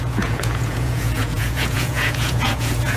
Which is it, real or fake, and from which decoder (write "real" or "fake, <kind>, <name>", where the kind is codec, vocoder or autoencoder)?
fake, vocoder, Vocos